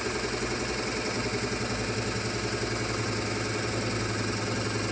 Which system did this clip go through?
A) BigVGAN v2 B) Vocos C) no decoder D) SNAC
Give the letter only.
C